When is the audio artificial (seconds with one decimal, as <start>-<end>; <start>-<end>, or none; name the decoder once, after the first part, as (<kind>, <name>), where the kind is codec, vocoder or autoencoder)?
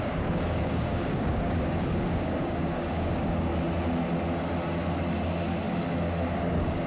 0.0-3.5 (codec, DAC); 6.3-6.9